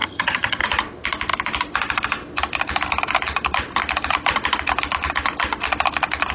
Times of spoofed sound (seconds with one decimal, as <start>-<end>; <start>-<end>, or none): 0.0-0.6